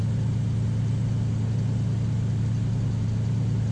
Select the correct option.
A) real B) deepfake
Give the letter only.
A